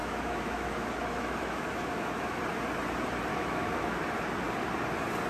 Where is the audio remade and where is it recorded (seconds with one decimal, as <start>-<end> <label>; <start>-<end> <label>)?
0.0-2.4 remade; 2.4-3.3 recorded; 3.3-4.0 remade; 4.0-5.3 recorded